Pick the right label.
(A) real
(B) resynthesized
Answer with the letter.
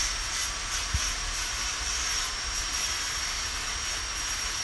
A